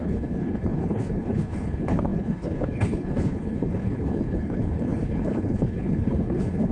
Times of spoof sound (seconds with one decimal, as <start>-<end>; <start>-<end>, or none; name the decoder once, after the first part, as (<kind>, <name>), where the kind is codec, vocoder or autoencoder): 0.0-6.7 (codec, HILCodec)